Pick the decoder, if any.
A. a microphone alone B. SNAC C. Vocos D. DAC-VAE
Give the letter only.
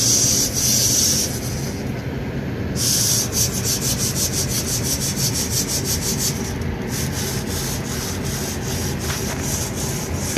A